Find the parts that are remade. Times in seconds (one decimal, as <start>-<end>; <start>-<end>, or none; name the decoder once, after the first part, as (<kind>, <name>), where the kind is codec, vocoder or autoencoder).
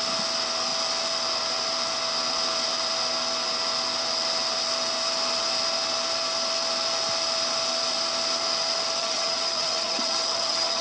9.0-10.8 (vocoder, HiFi-GAN)